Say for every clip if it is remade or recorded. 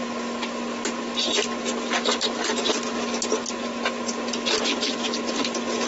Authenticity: recorded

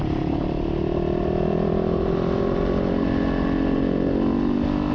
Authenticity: recorded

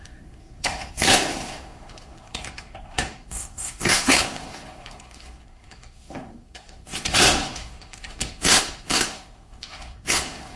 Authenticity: remade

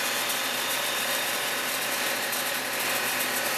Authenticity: recorded